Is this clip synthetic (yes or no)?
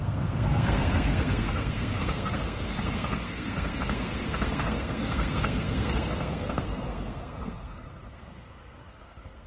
yes